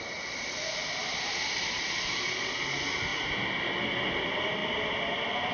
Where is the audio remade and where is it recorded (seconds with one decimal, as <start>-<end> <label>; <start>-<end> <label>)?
0.0-0.8 recorded; 0.8-2.3 remade; 2.3-5.5 recorded